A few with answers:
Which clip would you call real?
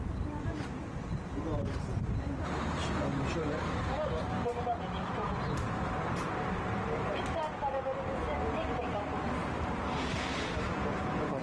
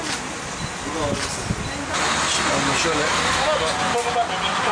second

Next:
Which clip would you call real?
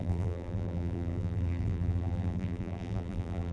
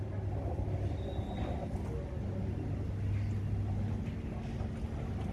second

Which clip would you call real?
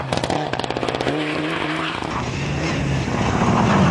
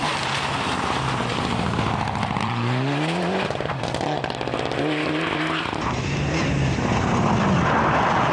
first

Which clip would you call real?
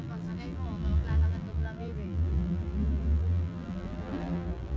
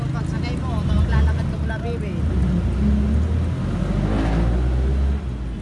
second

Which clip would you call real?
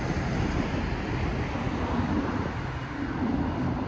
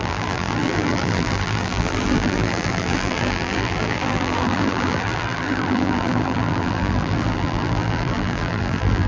first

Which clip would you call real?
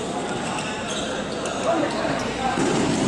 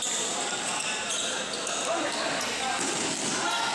second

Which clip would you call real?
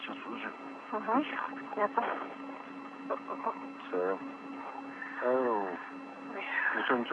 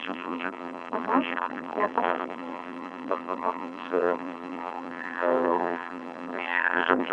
first